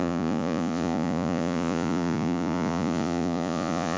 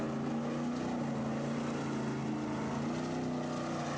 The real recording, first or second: second